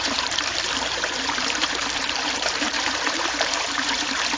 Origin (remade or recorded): remade